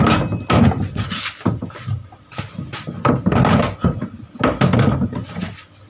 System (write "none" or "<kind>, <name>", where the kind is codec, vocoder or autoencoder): none